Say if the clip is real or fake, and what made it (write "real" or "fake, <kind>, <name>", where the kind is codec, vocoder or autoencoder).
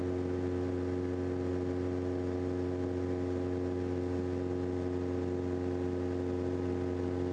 real